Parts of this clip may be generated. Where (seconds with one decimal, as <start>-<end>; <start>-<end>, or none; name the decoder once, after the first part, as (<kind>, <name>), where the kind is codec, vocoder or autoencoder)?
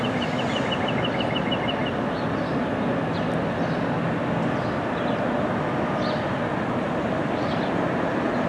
none